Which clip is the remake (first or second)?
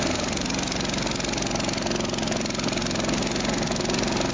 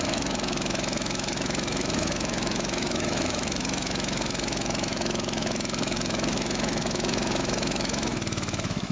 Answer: second